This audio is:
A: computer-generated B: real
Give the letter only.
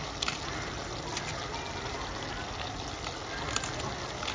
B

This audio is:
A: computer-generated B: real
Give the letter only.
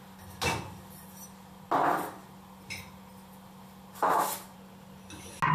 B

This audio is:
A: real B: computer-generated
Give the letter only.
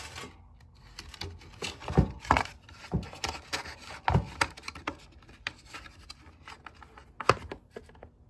A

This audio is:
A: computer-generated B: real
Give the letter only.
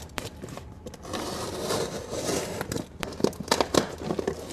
A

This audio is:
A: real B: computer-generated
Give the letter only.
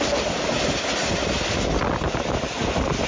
A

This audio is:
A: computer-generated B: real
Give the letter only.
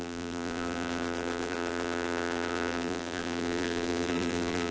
A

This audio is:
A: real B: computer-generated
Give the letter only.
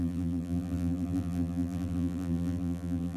B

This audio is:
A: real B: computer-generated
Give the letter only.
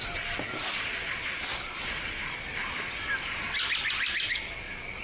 A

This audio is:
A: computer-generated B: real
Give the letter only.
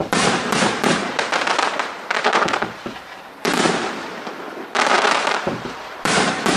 A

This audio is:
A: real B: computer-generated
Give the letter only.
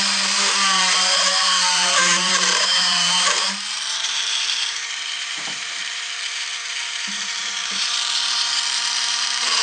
B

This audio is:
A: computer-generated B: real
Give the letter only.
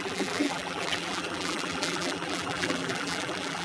A